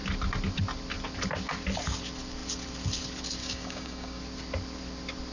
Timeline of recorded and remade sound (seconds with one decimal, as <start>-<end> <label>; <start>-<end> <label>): 0.0-3.4 recorded; 3.4-4.2 remade; 4.2-5.3 recorded